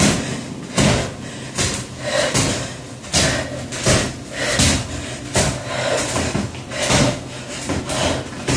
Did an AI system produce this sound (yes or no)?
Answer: no